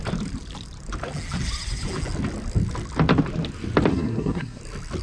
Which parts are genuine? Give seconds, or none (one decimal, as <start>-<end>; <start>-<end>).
0.0-3.9; 4.6-5.0